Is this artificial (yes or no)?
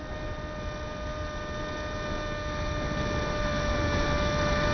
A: no